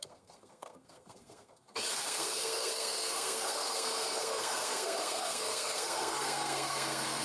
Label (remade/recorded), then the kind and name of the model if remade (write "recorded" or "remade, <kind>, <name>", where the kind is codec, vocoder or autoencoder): remade, codec, SNAC